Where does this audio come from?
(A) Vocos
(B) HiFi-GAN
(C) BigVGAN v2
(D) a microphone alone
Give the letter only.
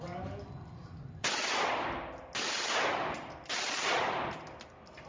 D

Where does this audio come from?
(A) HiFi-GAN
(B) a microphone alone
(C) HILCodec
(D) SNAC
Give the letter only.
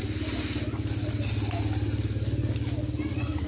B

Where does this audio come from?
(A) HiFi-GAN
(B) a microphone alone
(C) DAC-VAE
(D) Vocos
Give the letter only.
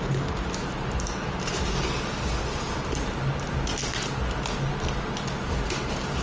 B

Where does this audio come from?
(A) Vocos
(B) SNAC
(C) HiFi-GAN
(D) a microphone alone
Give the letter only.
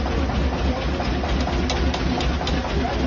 D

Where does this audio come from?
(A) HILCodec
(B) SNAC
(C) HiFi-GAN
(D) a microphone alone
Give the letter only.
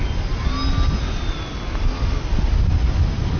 D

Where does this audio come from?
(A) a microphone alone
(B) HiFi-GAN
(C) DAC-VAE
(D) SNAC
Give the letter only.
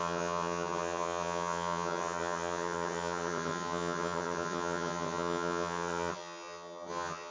B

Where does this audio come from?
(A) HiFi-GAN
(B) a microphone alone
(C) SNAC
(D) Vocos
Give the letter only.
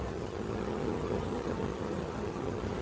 A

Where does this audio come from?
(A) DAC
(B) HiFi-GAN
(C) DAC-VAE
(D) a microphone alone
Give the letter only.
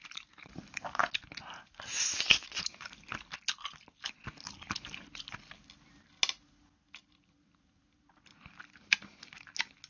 D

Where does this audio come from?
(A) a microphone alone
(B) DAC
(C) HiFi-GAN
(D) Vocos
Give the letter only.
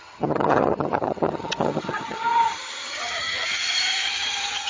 C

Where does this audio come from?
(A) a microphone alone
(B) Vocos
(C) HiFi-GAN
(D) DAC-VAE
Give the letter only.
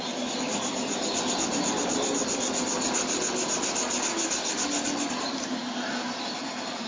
A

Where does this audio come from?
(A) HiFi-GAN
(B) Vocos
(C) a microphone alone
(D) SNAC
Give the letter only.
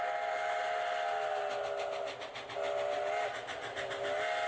C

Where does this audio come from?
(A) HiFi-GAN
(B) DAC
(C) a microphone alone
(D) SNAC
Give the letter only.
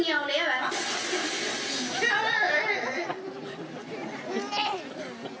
C